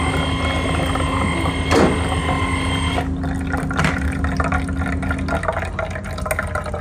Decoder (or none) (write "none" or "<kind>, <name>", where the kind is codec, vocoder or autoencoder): none